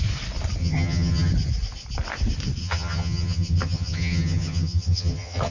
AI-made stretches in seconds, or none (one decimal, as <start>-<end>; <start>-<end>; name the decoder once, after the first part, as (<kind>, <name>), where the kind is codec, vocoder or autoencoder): 0.6-1.3 (vocoder, HiFi-GAN); 2.6-5.5